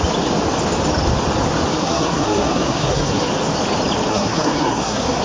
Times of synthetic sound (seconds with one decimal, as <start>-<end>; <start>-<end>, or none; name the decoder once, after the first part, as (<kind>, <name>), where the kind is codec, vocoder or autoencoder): 1.8-3.3 (codec, SNAC); 4.1-5.2